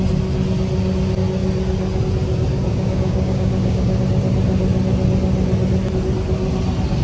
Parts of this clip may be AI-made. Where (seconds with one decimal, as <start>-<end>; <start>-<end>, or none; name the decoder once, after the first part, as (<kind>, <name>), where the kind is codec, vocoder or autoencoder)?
2.7-4.0 (codec, DAC)

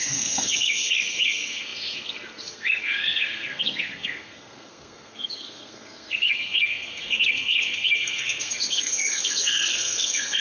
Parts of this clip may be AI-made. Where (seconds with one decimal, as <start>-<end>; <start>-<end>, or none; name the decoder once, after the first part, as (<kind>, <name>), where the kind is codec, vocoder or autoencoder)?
0.0-10.4 (codec, SNAC)

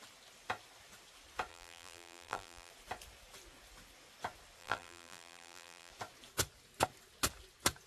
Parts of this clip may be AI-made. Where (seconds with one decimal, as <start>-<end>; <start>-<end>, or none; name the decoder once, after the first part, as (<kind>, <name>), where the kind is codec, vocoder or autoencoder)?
1.5-2.7 (vocoder, BigVGAN v2); 4.6-5.9

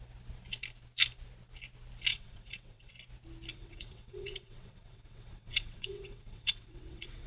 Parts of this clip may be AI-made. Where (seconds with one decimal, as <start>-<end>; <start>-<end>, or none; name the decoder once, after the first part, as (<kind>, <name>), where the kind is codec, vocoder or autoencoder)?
2.1-2.9 (vocoder, WaveNeXt); 3.5-7.3

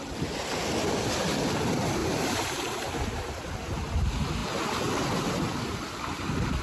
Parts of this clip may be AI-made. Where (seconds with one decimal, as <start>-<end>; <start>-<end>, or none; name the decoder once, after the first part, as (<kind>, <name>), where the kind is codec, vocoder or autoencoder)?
2.0-3.5 (vocoder, BigVGAN v2)